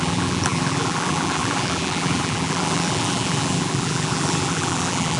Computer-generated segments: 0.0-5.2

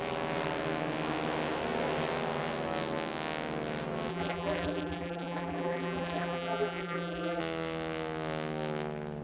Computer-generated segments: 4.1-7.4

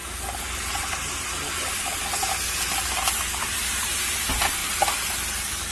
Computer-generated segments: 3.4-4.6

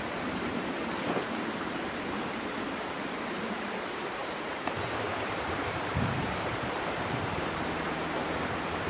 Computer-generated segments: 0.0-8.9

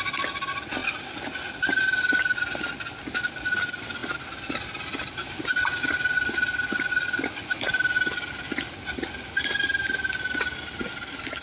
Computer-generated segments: 4.0-7.3